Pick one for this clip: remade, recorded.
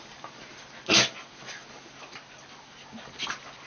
recorded